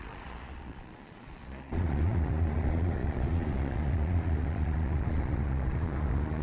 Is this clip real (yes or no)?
no